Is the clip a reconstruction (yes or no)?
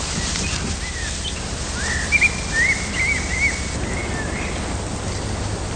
no